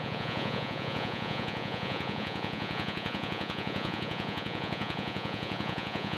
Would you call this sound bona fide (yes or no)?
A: no